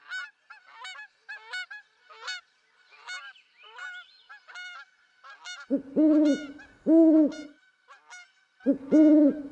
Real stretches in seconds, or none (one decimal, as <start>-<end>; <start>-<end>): 0.0-9.5